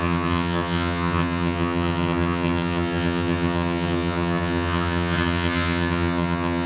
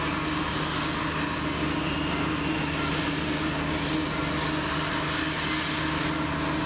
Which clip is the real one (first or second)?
second